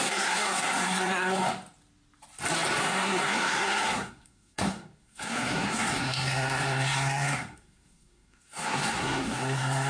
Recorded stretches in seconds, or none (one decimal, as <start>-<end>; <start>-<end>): 1.4-2.8